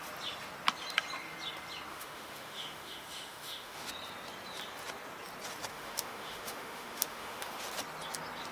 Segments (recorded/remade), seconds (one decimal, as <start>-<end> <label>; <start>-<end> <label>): 0.0-1.9 recorded; 1.9-3.9 remade; 3.9-5.7 recorded; 5.7-7.6 remade; 7.6-8.5 recorded